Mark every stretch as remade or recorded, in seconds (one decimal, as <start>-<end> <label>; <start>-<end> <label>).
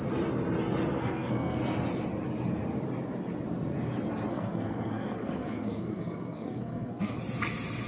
0.0-1.0 recorded; 1.0-1.6 remade; 1.6-4.3 recorded; 4.3-7.2 remade; 7.2-7.9 recorded